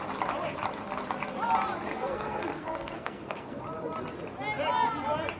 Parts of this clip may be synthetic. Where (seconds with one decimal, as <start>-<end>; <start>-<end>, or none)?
1.9-3.6